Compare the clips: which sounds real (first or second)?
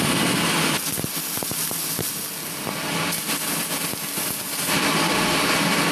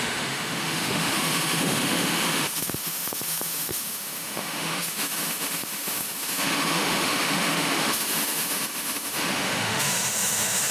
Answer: first